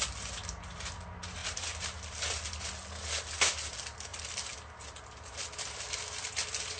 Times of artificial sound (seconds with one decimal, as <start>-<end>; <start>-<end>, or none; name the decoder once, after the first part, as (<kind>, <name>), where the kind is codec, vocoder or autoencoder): none